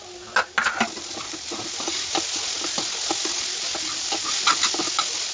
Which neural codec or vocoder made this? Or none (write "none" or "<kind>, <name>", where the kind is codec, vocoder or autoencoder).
none